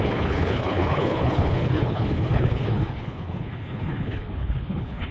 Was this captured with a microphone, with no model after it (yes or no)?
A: no